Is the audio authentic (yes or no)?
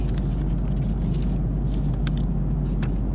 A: yes